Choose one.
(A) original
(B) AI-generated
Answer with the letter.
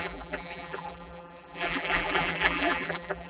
B